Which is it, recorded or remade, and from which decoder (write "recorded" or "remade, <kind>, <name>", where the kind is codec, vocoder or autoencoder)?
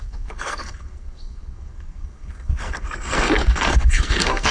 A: remade, codec, SNAC